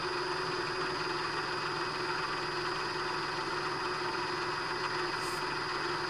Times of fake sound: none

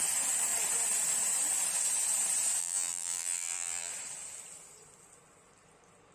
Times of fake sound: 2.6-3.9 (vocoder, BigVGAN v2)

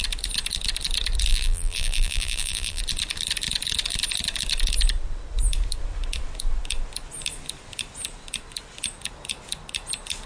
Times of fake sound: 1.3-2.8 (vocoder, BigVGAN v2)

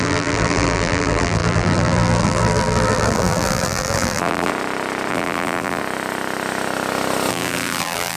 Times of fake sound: 0.0-4.5 (vocoder, BigVGAN v2); 5.1-5.8; 7.3-8.2

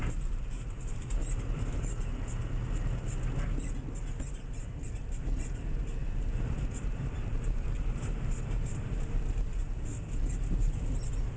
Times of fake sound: 0.0-1.2 (vocoder, BigVGAN v2); 4.2-11.4

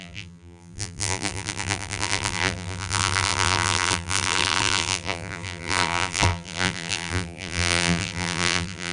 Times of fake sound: 0.0-8.9 (vocoder, BigVGAN v2)

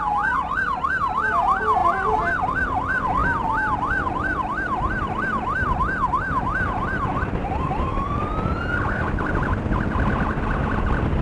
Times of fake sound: 3.2-5.2 (vocoder, BigVGAN v2); 6.9-8.2